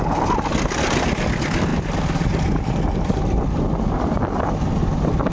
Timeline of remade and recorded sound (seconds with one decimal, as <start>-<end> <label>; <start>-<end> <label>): 0.0-5.3 recorded